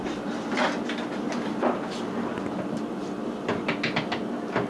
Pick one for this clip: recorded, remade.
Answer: recorded